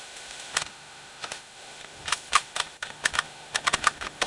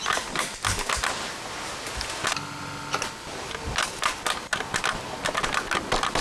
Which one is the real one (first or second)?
second